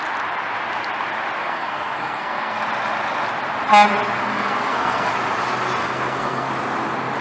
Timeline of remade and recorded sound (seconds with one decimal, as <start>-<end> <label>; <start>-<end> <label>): 0.0-1.4 recorded; 1.4-2.6 remade; 2.6-4.2 recorded; 4.2-5.1 remade; 5.1-5.8 recorded; 5.8-6.5 remade; 6.5-7.2 recorded